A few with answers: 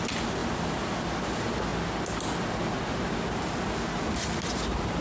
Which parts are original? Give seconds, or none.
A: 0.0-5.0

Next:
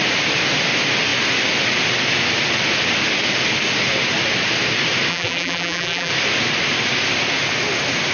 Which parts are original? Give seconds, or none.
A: 0.0-5.1; 6.1-8.1

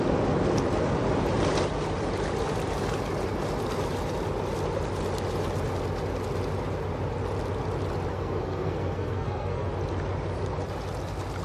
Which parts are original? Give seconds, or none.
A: 0.0-8.1; 9.7-11.4

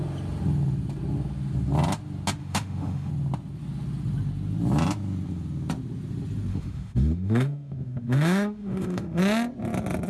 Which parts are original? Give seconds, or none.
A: 0.0-2.4; 3.1-6.5; 9.2-10.1

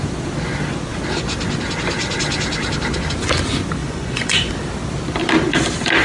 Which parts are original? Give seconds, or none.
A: 0.0-3.8; 4.5-6.0